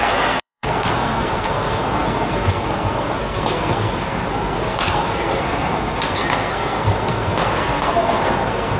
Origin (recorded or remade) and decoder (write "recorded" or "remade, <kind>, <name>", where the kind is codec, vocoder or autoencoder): remade, codec, SNAC